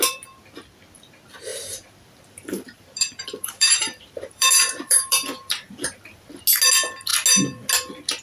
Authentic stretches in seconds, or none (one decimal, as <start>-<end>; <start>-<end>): 0.0-1.5; 6.4-8.2